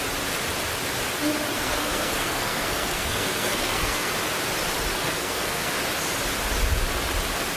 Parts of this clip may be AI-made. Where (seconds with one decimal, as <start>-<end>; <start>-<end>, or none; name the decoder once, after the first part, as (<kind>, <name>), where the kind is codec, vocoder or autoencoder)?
1.5-4.1 (codec, SNAC); 4.9-5.7